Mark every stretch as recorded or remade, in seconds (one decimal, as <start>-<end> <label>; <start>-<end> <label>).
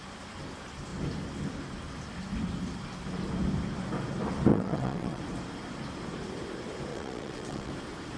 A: 0.0-4.5 recorded; 4.5-5.2 remade; 5.2-6.9 recorded; 6.9-7.7 remade; 7.7-8.2 recorded